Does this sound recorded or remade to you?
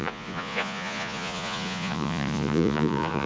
remade